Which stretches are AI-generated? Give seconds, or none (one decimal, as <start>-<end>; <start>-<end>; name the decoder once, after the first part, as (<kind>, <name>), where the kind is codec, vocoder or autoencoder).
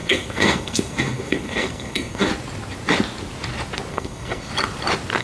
0.0-2.3 (codec, SNAC); 3.9-4.5